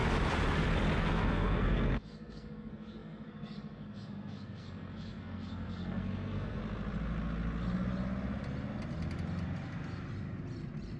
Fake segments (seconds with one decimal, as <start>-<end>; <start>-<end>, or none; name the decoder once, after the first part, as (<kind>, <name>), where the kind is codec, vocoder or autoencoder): 1.0-6.6 (codec, SNAC)